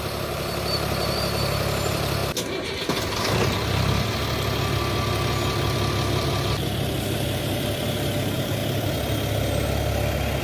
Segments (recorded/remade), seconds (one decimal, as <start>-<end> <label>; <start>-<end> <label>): 0.0-2.2 remade; 2.2-7.0 recorded; 7.0-8.6 remade; 8.6-10.4 recorded